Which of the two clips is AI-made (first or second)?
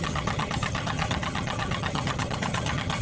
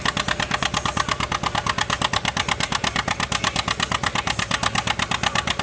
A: first